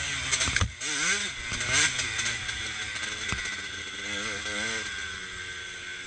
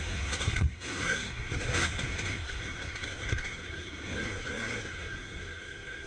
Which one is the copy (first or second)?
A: second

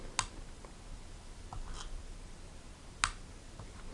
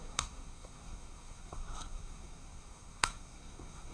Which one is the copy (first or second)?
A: second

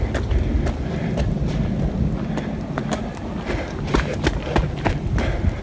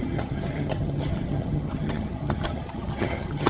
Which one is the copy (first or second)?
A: second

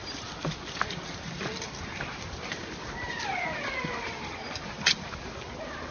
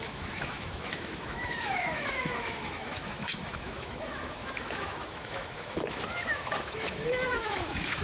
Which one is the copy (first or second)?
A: second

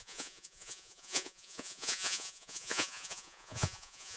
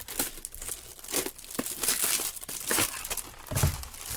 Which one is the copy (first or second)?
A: first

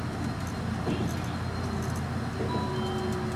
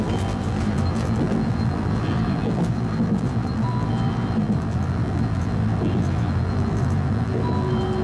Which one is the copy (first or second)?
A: second